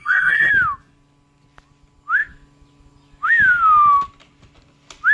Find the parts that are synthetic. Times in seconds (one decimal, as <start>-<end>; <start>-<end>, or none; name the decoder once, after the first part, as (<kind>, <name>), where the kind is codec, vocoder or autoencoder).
0.0-0.5 (codec, SNAC)